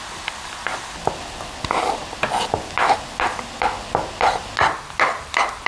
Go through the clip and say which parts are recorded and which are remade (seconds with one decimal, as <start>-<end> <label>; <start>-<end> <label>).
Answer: 0.0-0.7 remade; 0.7-4.1 recorded; 4.1-5.7 remade